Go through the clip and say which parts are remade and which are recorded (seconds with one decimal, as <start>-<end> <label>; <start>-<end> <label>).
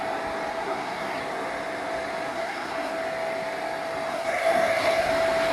0.0-0.5 recorded; 0.5-1.2 remade; 1.2-2.3 recorded; 2.3-2.9 remade; 2.9-4.1 recorded; 4.1-5.1 remade; 5.1-5.5 recorded